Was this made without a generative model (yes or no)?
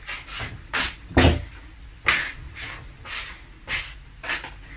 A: yes